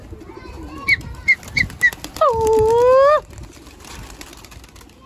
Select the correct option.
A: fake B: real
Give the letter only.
B